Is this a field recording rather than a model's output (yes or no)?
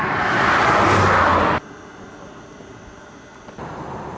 yes